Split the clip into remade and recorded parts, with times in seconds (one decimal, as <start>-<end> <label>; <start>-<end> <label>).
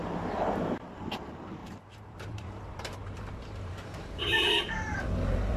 0.0-1.6 recorded; 1.6-5.0 remade; 5.0-5.6 recorded